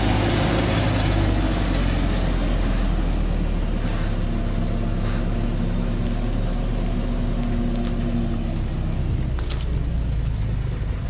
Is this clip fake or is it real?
real